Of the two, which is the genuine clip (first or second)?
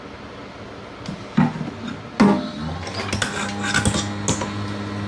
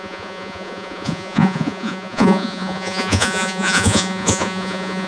first